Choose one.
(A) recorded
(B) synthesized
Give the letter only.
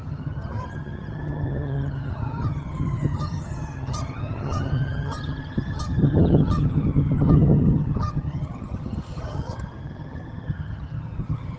B